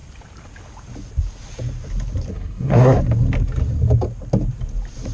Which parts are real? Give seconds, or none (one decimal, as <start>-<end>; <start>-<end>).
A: 0.0-2.3; 3.0-5.1